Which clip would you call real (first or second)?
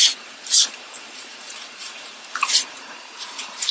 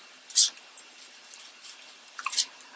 second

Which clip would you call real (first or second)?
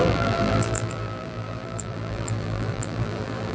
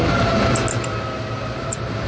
second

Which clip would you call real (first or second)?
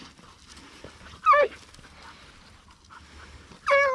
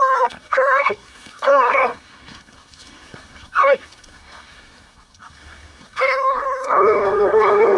first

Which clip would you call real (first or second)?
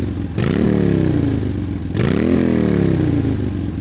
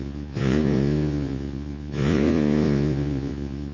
first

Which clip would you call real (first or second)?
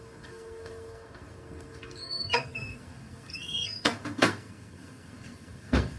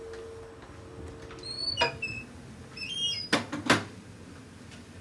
second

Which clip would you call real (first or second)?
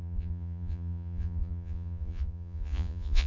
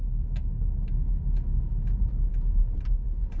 second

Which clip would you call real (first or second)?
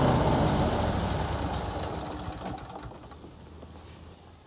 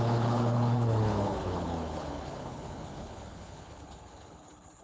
first